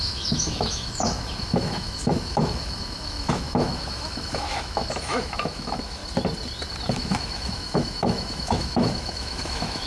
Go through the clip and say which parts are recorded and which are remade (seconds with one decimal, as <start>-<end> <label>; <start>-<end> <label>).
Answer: 0.0-6.0 remade; 6.0-6.9 recorded; 6.9-9.9 remade